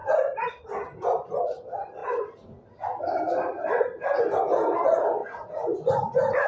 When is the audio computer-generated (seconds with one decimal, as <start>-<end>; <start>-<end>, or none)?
0.0-1.4; 2.0-4.2